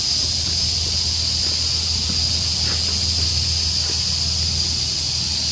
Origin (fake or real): real